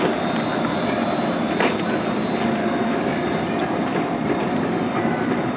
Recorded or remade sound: recorded